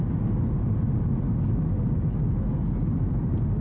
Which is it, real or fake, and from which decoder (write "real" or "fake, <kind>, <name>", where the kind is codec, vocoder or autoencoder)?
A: real